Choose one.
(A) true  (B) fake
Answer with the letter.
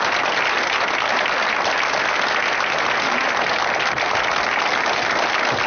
A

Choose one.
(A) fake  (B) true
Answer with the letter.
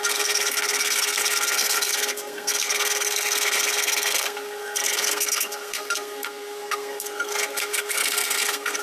A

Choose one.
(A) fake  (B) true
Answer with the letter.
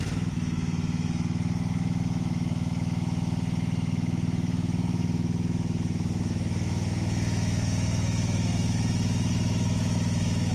A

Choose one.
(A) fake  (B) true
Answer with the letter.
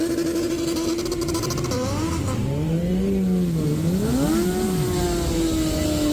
B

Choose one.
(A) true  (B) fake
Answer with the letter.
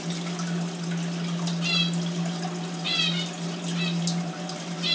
A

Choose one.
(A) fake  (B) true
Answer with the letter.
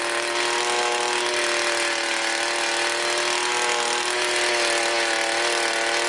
B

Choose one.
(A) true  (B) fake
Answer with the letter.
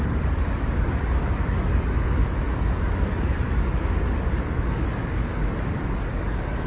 B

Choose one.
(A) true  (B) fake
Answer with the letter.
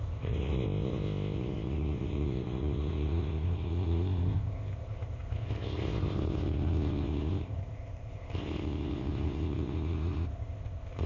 B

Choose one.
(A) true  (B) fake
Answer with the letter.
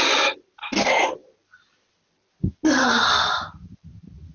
A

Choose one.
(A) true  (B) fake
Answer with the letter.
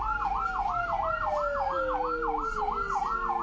A